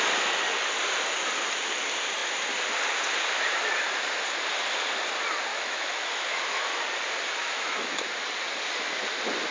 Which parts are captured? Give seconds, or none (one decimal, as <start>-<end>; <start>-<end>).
0.0-5.5; 6.8-7.4; 8.0-9.5